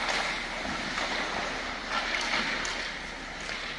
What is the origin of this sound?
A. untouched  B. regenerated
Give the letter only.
A